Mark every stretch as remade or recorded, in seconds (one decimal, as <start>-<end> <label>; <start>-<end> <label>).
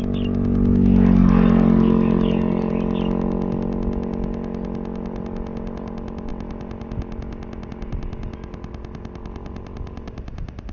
0.0-1.2 recorded; 1.2-2.7 remade; 2.7-10.7 recorded